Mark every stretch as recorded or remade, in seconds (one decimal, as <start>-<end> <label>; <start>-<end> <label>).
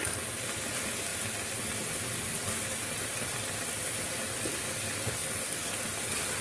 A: 0.0-6.4 recorded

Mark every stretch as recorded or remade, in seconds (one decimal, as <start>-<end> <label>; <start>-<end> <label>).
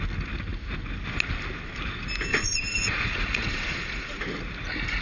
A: 0.0-2.3 recorded; 2.3-4.2 remade; 4.2-5.0 recorded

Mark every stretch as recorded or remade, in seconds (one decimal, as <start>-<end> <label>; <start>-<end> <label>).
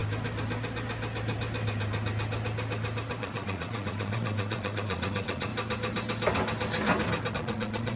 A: 0.0-3.2 recorded; 3.2-5.5 remade; 5.5-7.3 recorded; 7.3-8.0 remade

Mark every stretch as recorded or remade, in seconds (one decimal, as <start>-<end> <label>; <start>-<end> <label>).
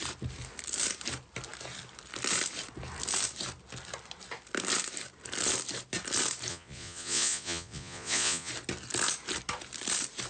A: 0.0-6.5 recorded; 6.5-8.5 remade; 8.5-10.3 recorded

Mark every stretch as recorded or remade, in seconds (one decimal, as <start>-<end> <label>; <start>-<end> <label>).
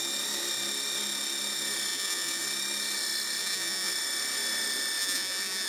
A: 0.0-1.9 recorded; 1.9-2.4 remade; 2.4-3.4 recorded; 3.4-3.9 remade; 3.9-5.0 recorded; 5.0-5.7 remade